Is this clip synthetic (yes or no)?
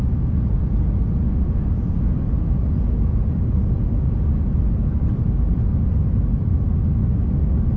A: no